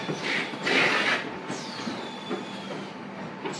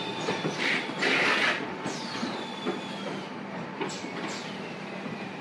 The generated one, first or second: second